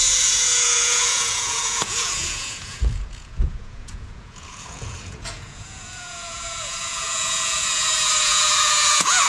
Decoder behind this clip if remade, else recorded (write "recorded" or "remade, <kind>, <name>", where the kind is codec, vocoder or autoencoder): remade, vocoder, Vocos